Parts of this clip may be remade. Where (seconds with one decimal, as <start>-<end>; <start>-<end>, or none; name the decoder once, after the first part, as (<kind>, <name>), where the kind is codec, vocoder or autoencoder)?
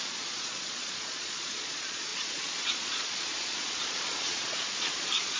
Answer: 0.0-5.4 (vocoder, Vocos)